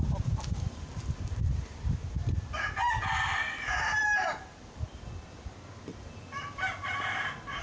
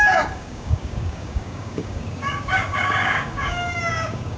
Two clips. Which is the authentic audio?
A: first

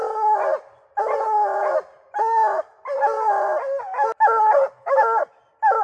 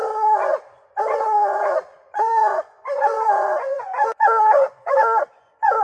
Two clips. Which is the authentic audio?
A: first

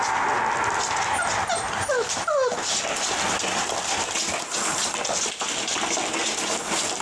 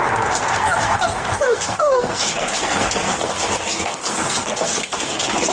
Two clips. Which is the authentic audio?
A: first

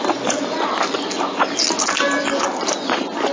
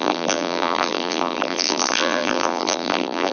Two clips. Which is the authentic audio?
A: first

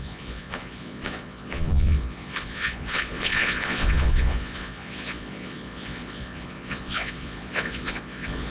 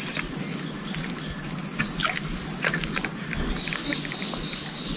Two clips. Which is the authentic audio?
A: second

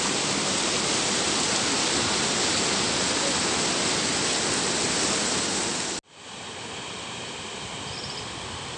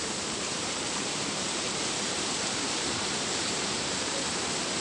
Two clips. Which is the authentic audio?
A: first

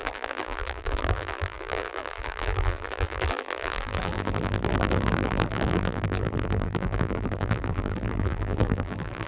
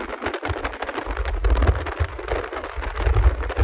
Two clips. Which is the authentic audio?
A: second